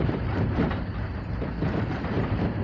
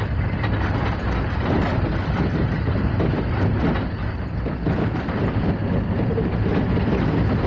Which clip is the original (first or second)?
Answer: second